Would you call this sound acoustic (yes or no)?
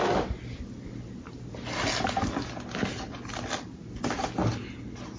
yes